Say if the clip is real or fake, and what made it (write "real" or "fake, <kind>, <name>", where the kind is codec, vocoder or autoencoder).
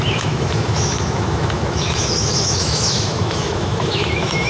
fake, autoencoder, DAC-VAE